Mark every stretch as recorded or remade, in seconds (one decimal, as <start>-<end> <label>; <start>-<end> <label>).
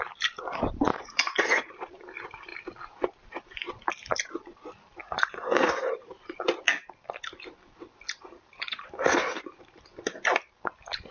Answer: 0.0-0.9 recorded; 0.9-1.7 remade; 1.7-5.0 recorded; 5.0-5.7 remade; 5.7-11.1 recorded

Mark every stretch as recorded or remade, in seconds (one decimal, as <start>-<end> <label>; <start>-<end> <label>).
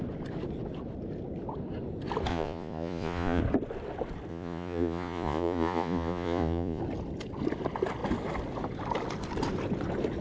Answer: 0.0-2.3 recorded; 2.3-3.4 remade; 3.4-4.3 recorded; 4.3-6.8 remade; 6.8-10.2 recorded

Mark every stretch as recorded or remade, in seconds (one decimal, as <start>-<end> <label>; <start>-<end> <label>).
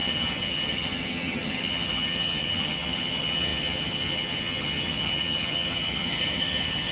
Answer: 0.0-6.9 remade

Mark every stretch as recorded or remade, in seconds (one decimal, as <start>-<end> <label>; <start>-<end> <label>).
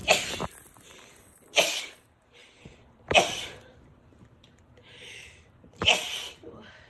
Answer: 0.0-1.8 recorded; 1.8-6.9 remade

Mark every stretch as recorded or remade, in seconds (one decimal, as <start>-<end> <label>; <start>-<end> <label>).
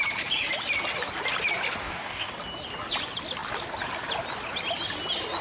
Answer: 0.0-1.8 recorded; 1.8-2.3 remade; 2.3-5.4 recorded